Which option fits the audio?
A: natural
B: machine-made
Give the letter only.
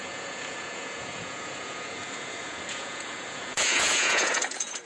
B